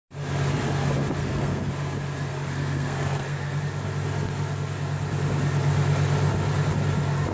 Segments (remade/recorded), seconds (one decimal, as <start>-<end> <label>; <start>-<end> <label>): 0.0-1.2 recorded; 1.2-1.7 remade; 1.7-2.3 recorded; 2.3-3.6 remade; 3.6-7.3 recorded